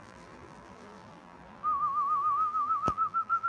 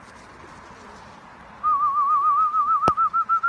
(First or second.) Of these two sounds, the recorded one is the second